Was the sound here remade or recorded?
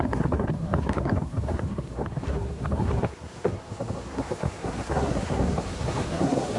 remade